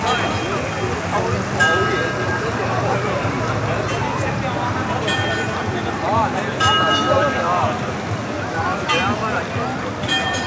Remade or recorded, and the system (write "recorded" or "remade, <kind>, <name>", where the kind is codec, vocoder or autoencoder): recorded